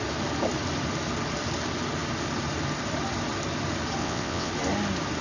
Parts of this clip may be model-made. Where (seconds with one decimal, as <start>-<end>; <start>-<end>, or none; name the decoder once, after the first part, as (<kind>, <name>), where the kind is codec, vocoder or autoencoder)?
4.0-4.5 (vocoder, WaveNeXt)